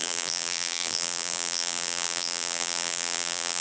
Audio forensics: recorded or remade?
remade